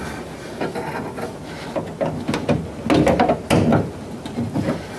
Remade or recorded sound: recorded